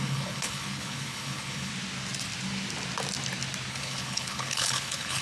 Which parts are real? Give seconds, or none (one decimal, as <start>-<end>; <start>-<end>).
1.7-3.7